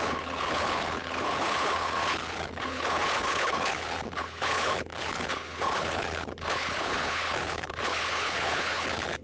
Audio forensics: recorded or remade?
remade